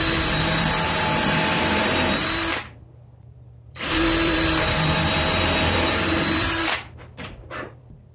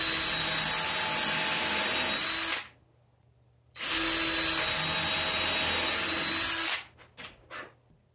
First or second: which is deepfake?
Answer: first